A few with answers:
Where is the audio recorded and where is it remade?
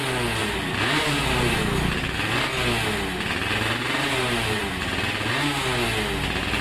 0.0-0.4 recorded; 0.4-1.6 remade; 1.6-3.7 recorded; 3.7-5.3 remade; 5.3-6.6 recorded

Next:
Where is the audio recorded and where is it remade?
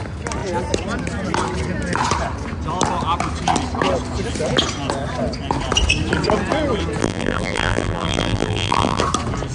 0.0-7.0 recorded; 7.0-9.0 remade; 9.0-9.5 recorded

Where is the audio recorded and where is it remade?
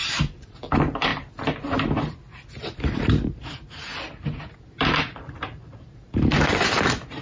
0.0-1.1 remade; 1.1-2.5 recorded; 2.5-3.9 remade; 3.9-4.9 recorded; 4.9-7.2 remade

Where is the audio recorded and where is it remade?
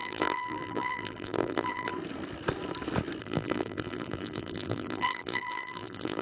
0.0-1.9 remade; 1.9-3.2 recorded; 3.2-6.2 remade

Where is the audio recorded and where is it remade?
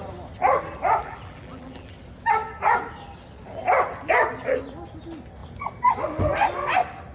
0.0-1.0 recorded; 1.0-1.9 remade; 1.9-7.1 recorded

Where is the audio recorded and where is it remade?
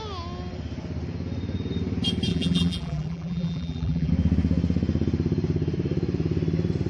0.0-2.3 recorded; 2.3-4.1 remade; 4.1-6.9 recorded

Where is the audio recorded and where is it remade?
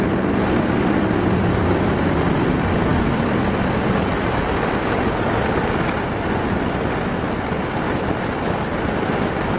0.0-9.6 recorded